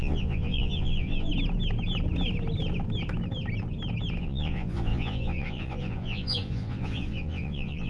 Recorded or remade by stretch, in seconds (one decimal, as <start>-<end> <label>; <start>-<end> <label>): 0.0-1.3 remade; 1.3-4.2 recorded; 4.2-7.9 remade